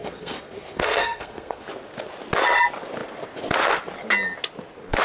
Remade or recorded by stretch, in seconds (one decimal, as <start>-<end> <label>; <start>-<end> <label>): 0.0-1.7 remade; 1.7-5.0 recorded

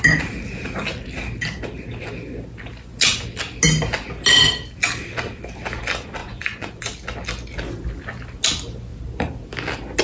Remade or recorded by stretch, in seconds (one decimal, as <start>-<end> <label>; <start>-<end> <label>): 0.0-6.2 recorded; 6.2-6.8 remade; 6.8-10.0 recorded